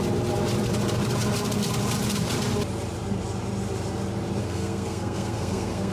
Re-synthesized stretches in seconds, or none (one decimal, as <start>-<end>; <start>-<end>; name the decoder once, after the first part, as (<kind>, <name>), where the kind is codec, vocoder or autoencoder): 4.4-5.9 (codec, SNAC)